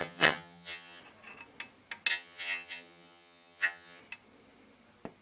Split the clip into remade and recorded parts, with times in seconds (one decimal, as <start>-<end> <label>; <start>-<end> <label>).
0.0-1.0 remade; 1.0-2.1 recorded; 2.1-4.0 remade; 4.0-5.2 recorded